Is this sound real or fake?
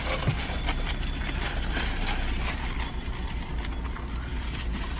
real